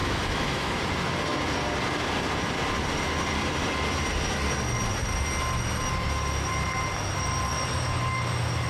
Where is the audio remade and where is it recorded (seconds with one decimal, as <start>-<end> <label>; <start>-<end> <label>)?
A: 0.0-0.8 remade; 0.8-8.7 recorded